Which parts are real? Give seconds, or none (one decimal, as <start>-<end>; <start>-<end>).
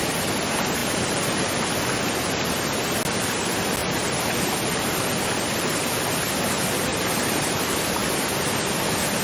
0.0-0.8; 1.5-3.8; 5.1-6.9; 7.5-9.2